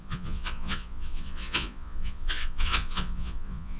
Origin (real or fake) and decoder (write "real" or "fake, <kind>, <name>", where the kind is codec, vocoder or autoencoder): fake, vocoder, Vocos